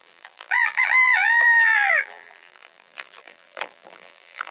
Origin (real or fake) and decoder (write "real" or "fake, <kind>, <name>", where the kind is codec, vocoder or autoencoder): fake, vocoder, BigVGAN v2